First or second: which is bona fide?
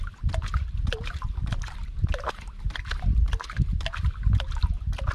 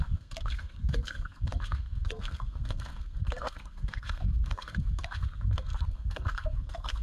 first